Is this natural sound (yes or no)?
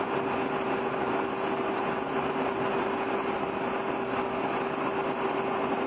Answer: yes